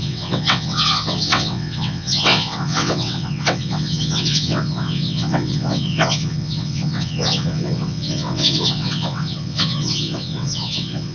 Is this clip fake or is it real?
fake